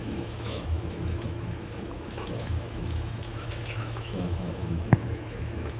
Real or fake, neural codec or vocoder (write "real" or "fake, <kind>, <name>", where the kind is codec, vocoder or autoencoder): fake, autoencoder, DAC-VAE